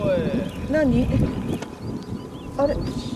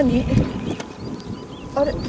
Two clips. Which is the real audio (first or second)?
first